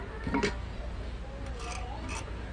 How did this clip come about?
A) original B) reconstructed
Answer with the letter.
A